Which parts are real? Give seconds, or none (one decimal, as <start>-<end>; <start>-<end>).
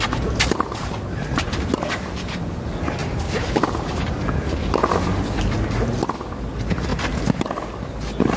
0.0-3.0; 4.1-4.9; 5.4-8.4